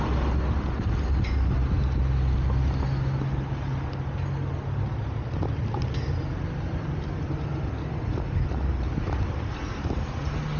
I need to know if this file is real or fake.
real